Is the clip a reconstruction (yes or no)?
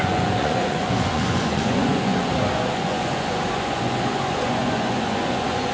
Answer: yes